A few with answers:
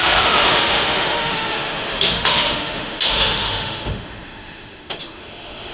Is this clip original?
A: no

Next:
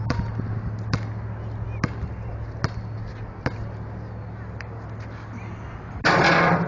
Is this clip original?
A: yes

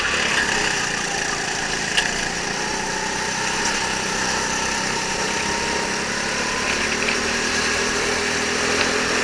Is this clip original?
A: yes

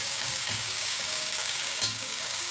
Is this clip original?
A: no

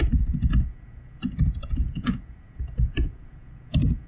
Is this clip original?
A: no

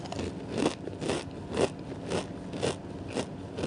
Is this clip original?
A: yes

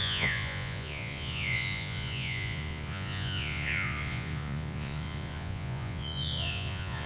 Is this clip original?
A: no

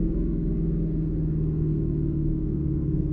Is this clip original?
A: no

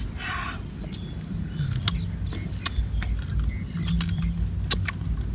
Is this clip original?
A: yes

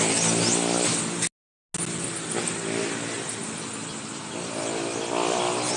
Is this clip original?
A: yes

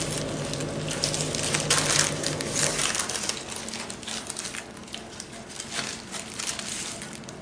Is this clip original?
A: yes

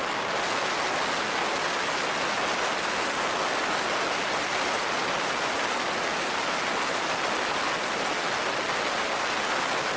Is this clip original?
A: yes